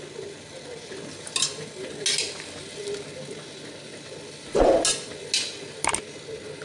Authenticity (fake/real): real